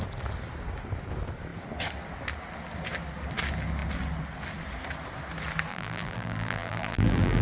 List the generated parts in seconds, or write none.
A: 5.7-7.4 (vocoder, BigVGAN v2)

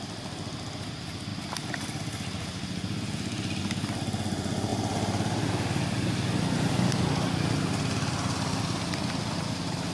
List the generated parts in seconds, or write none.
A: none

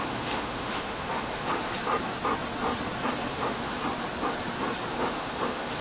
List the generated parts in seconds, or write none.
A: 0.0-1.7 (autoencoder, DAC-VAE); 3.3-3.8; 4.9-5.8

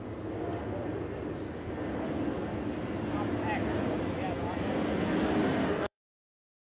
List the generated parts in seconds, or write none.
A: 5.6-6.3 (codec, DAC)

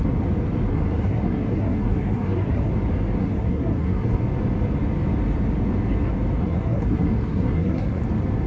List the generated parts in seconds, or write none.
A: 0.7-2.7 (codec, SNAC); 3.2-4.2; 6.4-8.0

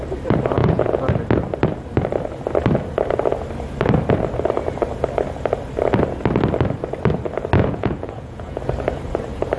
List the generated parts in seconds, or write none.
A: 0.6-1.1 (vocoder, Vocos); 7.6-8.6

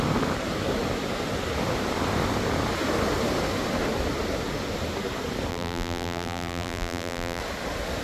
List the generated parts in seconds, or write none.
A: 5.5-7.4 (vocoder, BigVGAN v2)